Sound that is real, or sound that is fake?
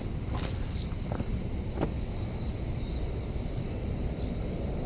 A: real